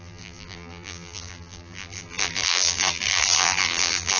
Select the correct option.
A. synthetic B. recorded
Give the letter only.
A